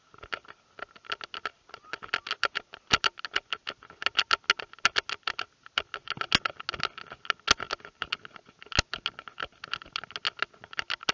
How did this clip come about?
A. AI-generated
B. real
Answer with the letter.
B